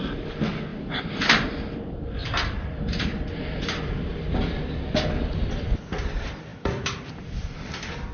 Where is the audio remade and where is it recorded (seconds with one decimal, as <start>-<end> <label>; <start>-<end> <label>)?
0.0-0.7 recorded; 0.7-1.7 remade; 1.7-2.2 recorded; 2.2-3.8 remade; 3.8-6.5 recorded; 6.5-7.0 remade; 7.0-8.1 recorded